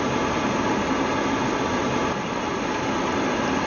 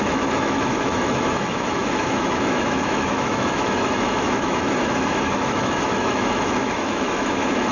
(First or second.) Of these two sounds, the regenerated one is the second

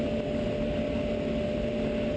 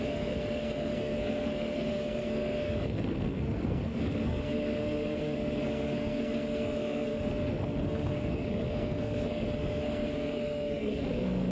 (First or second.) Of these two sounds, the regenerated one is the second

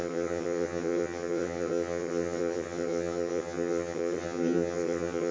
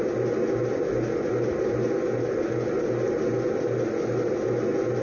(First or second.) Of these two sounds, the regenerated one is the first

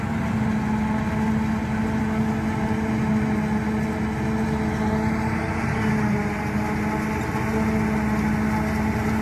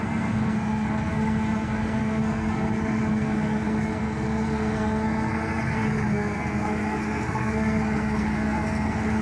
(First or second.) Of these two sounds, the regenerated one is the second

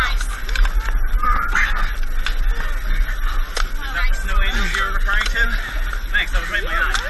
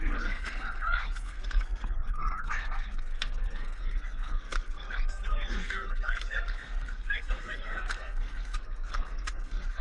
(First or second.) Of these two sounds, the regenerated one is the second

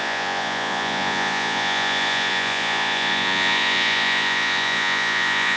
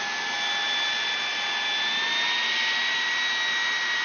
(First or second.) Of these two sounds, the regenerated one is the first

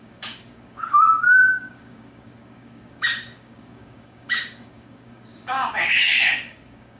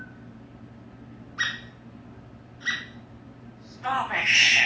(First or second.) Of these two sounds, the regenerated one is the first